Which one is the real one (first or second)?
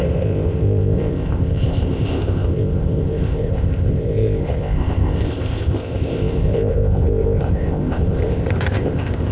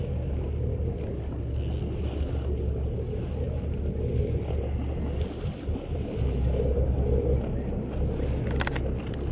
second